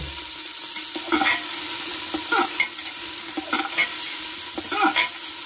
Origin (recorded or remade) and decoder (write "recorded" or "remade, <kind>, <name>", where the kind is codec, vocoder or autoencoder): recorded